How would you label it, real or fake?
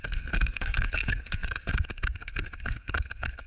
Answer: fake